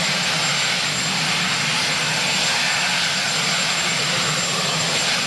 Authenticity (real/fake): real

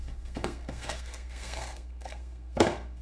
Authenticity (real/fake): fake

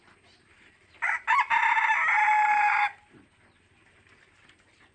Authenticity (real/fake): real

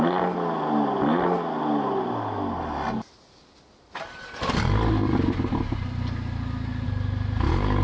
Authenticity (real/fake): real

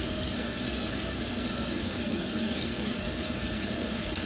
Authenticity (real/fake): fake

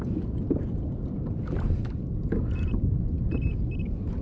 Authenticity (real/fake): real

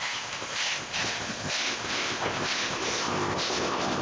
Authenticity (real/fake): fake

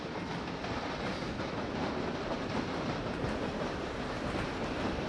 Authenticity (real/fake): fake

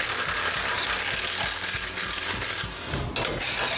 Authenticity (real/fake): real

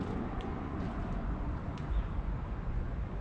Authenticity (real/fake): fake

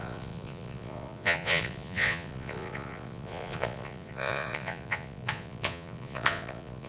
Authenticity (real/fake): fake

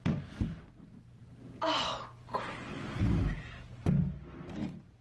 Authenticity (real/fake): real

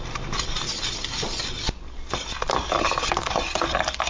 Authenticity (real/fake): real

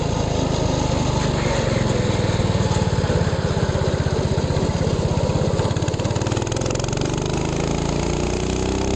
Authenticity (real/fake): real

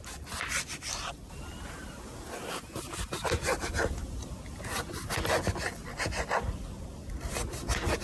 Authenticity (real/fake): real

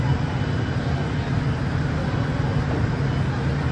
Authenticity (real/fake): real